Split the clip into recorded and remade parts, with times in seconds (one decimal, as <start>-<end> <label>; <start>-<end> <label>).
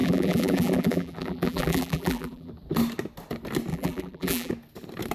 0.0-2.5 remade; 2.5-3.7 recorded; 3.7-4.5 remade; 4.5-5.1 recorded